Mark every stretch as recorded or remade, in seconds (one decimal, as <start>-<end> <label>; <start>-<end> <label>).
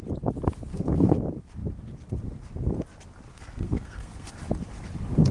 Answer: 0.0-0.7 recorded; 0.7-1.2 remade; 1.2-3.3 recorded; 3.3-4.3 remade; 4.3-5.3 recorded